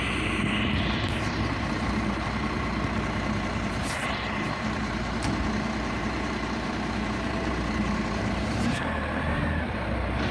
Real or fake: fake